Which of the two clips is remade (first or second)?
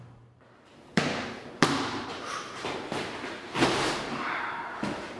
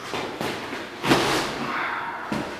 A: first